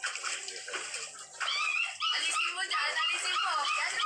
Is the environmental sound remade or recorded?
recorded